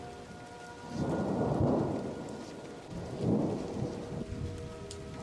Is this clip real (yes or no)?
yes